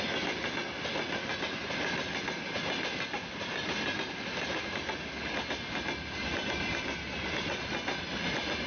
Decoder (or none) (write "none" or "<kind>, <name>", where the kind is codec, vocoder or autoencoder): none